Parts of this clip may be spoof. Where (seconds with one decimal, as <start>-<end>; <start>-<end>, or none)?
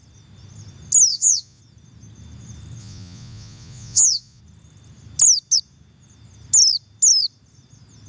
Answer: 1.1-1.6; 2.8-4.4